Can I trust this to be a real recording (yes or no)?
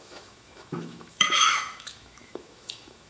no